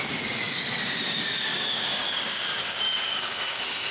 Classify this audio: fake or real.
fake